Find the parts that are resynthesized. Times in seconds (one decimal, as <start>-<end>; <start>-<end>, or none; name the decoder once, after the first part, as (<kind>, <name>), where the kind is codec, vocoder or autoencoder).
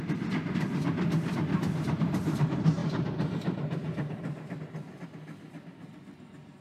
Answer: none